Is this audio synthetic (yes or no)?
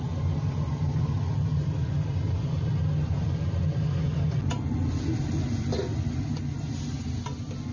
no